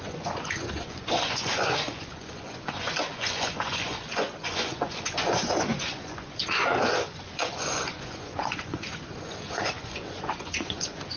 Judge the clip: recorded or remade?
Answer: remade